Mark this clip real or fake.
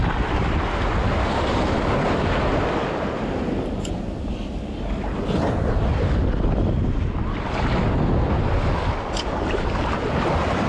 real